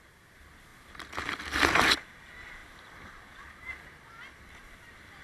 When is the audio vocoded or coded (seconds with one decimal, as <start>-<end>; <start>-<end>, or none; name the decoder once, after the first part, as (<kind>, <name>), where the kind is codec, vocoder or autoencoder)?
none